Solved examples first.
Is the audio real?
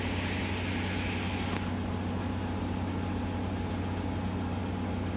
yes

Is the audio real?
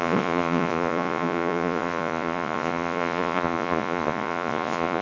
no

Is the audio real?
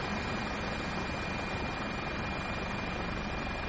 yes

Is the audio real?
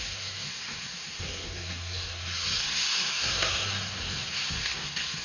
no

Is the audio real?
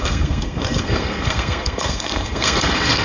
no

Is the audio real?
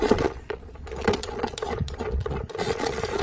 no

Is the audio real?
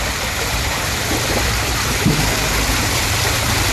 no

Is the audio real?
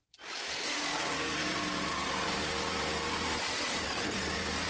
yes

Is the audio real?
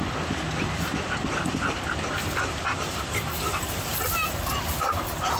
yes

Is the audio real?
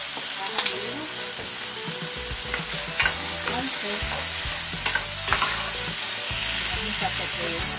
yes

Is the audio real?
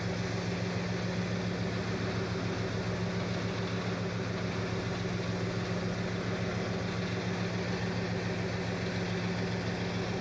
yes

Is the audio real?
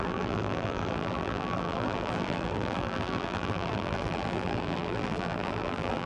no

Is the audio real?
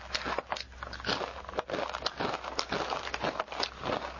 yes